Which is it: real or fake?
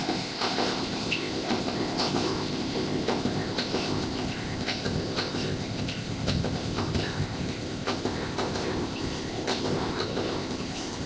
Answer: fake